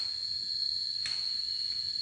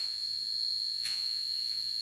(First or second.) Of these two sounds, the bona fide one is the first